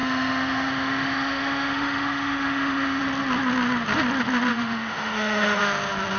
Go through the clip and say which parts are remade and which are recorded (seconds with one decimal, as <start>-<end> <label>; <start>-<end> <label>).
0.0-3.0 remade; 3.0-4.5 recorded; 4.5-5.6 remade; 5.6-6.2 recorded